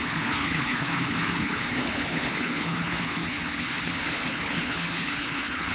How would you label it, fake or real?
fake